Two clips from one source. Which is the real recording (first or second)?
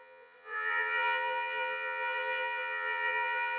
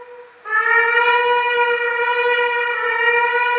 second